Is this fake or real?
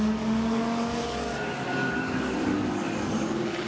fake